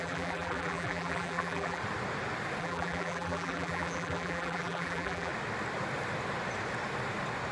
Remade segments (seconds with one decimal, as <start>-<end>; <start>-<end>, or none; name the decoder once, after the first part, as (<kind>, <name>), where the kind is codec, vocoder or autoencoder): 0.0-1.8 (vocoder, BigVGAN v2); 2.6-5.3